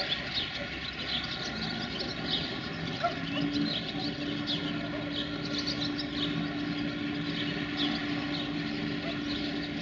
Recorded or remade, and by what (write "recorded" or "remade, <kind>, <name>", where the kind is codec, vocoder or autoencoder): recorded